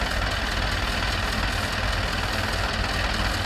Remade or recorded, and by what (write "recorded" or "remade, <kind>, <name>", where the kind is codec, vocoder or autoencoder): recorded